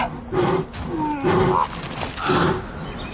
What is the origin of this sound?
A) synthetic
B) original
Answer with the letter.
B